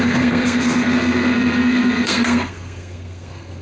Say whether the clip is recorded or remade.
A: remade